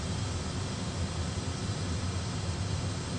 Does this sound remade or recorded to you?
recorded